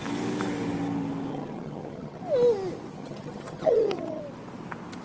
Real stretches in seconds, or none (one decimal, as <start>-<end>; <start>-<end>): 0.0-1.3; 2.2-2.9; 4.2-5.0